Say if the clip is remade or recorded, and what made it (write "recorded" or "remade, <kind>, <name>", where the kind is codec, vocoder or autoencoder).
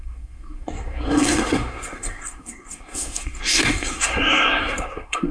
remade, codec, SNAC